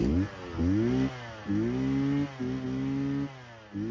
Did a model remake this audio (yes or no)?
no